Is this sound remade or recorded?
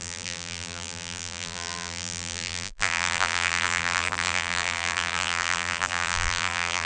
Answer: remade